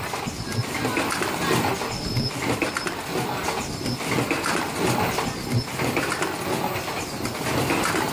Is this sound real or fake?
real